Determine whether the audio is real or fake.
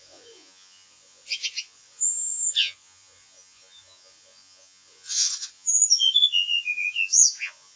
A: fake